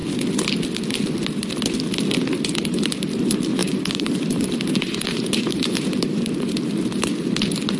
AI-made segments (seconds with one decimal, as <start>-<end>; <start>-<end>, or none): 3.6-7.1